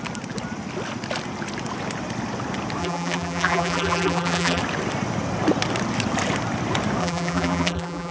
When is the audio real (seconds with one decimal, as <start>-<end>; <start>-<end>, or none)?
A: 0.0-2.8; 4.6-7.0